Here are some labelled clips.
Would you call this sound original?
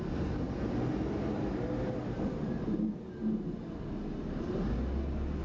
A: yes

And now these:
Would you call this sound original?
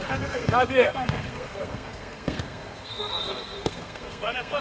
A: no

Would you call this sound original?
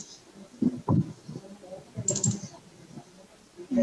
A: yes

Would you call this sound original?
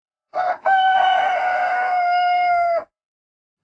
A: no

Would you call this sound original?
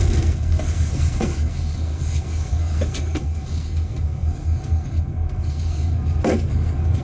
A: no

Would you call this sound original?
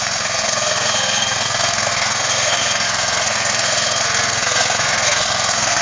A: no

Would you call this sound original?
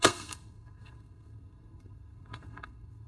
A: no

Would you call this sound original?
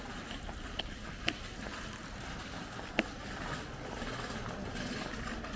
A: yes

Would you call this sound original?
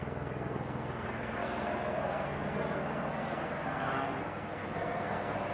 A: no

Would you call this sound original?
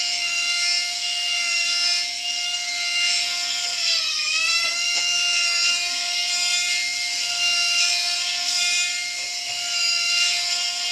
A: no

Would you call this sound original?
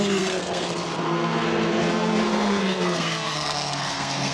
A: no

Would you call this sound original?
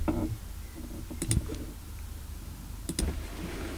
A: yes